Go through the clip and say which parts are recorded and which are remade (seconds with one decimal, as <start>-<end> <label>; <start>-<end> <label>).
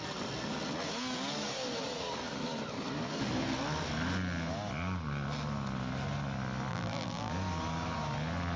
0.0-6.7 recorded; 6.7-7.3 remade; 7.3-8.6 recorded